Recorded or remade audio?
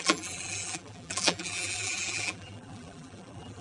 remade